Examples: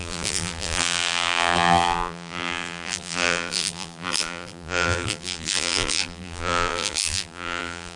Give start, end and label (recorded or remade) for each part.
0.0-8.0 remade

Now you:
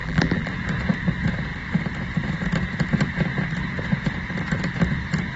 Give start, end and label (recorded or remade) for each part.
0.0-0.5 remade; 0.5-5.4 recorded

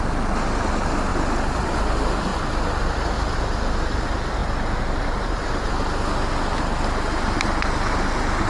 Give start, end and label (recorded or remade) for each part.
0.0-4.4 recorded; 4.4-5.7 remade; 5.7-8.5 recorded

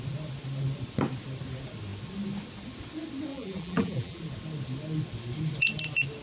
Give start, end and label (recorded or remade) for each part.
0.0-3.3 recorded; 3.3-4.2 remade; 4.2-6.2 recorded

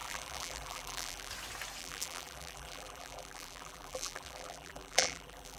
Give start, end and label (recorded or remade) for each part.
0.0-1.3 remade; 1.3-1.8 recorded; 1.8-5.6 remade

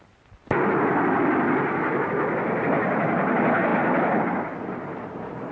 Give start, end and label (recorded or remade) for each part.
0.0-5.5 recorded

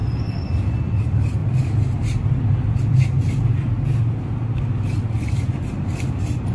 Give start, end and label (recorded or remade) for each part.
0.0-1.4 remade; 1.4-5.3 recorded; 5.3-6.5 remade